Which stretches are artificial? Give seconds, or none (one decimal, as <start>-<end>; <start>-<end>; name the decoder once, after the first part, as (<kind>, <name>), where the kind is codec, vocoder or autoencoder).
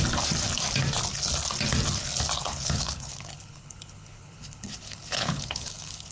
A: 2.4-6.1 (codec, HILCodec)